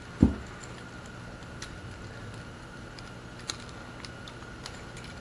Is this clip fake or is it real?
real